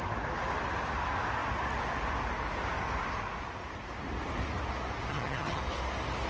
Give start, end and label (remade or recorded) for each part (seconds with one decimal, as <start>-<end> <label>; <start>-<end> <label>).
0.0-5.1 recorded; 5.1-5.6 remade; 5.6-6.3 recorded